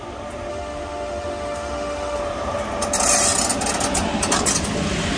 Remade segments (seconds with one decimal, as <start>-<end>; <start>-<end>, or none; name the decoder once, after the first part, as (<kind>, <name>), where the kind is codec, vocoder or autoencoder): 0.5-2.2 (autoencoder, DAC-VAE)

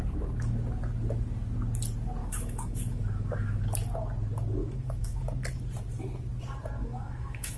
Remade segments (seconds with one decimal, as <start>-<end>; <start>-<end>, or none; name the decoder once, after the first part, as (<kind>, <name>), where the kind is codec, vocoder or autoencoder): 2.2-3.6 (autoencoder, DAC-VAE); 4.6-5.2; 6.8-7.6

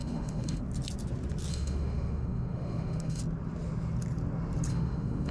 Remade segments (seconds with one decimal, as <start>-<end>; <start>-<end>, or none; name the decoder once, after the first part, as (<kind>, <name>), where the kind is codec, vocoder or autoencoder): 0.0-0.6 (autoencoder, DAC-VAE); 1.5-3.2; 4.7-5.3

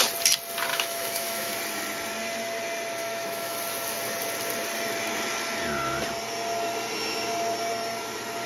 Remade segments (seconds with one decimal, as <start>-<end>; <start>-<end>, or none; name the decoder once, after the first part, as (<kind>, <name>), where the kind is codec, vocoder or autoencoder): 0.7-1.5 (autoencoder, DAC-VAE); 3.0-3.6